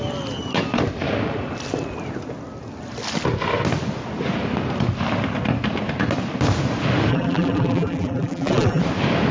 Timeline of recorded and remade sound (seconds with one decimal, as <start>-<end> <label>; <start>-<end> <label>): 0.0-7.1 recorded; 7.1-8.8 remade; 8.8-9.3 recorded

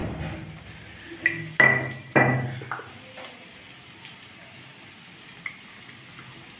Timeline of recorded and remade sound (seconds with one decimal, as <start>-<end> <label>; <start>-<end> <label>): 0.0-4.7 recorded; 4.7-5.5 remade; 5.5-6.6 recorded